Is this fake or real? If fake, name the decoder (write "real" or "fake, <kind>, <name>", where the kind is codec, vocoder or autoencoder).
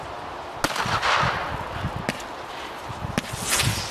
real